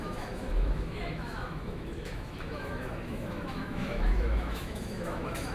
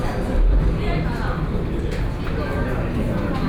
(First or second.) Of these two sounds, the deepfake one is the first